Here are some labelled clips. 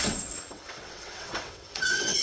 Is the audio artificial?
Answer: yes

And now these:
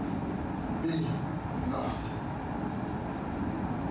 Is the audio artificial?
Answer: no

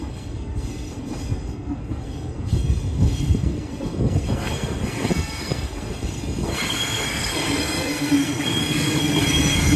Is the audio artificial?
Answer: yes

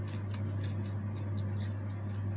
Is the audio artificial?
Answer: no